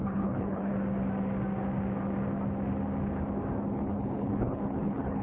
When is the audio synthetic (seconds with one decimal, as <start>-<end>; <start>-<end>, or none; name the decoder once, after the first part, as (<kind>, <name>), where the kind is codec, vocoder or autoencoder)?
0.0-0.7 (codec, HILCodec); 3.7-5.2